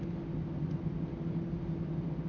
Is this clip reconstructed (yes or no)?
no